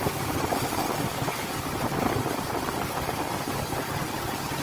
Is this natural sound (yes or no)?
yes